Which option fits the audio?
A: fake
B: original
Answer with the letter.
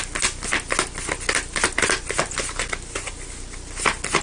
B